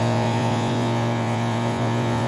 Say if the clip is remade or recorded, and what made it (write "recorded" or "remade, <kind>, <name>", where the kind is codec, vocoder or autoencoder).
remade, vocoder, Vocos